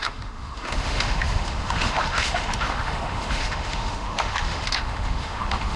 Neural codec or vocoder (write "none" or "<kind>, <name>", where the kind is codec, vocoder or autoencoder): autoencoder, DAC-VAE